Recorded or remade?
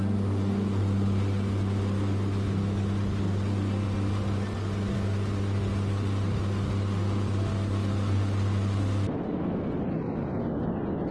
recorded